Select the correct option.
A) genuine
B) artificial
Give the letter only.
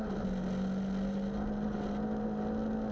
A